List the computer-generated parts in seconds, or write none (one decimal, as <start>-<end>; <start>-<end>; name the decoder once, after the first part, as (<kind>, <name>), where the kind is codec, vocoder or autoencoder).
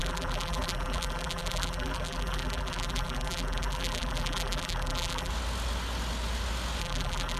0.0-5.3 (vocoder, BigVGAN v2); 6.8-7.4